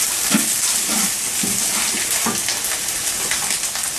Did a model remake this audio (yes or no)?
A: no